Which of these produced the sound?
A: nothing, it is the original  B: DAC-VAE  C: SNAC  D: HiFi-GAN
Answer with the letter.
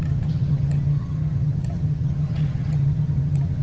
D